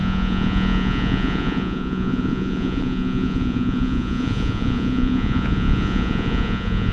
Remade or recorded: remade